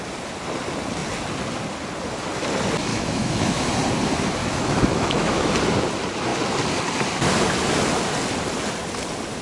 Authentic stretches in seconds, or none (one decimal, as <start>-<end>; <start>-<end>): 0.0-2.9; 3.6-4.4; 5.5-9.4